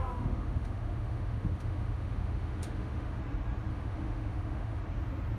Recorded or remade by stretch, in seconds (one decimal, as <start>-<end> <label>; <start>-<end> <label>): 0.0-3.2 remade; 3.2-3.7 recorded; 3.7-4.8 remade; 4.8-5.4 recorded